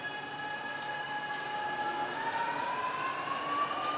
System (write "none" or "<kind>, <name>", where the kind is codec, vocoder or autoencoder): none